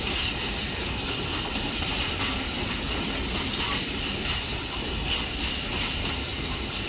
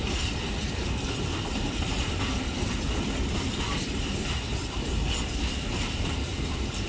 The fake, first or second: second